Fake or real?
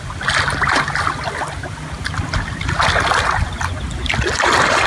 real